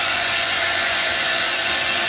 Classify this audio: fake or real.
fake